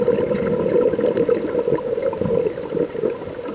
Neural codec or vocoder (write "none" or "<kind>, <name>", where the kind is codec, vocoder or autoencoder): none